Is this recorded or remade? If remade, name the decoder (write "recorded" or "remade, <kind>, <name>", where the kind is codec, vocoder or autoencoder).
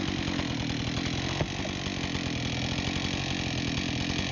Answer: recorded